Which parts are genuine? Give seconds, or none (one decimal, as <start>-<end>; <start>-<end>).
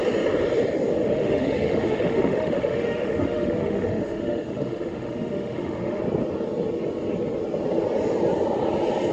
0.0-1.1; 6.0-9.1